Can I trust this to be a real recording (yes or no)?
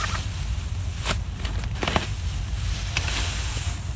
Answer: yes